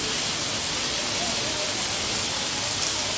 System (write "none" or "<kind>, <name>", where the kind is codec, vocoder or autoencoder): none